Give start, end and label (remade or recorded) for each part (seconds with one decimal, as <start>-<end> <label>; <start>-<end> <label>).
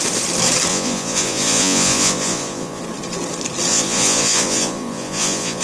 0.0-0.7 recorded; 0.7-2.8 remade; 2.8-3.7 recorded; 3.7-5.6 remade